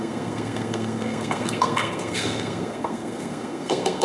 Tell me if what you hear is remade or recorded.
remade